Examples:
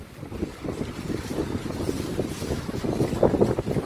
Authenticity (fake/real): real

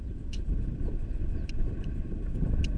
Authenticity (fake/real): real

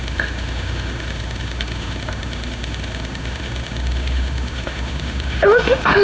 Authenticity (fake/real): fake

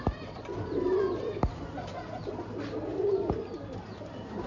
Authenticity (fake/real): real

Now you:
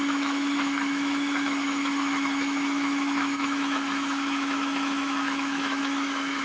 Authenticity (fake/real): fake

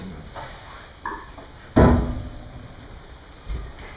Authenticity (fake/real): real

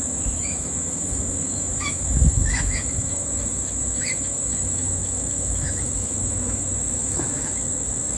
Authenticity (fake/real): fake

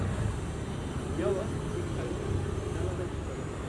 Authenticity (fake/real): real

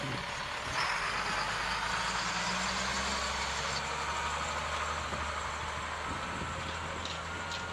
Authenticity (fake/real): real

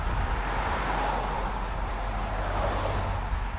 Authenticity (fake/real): real